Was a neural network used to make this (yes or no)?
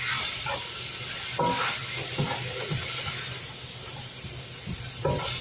yes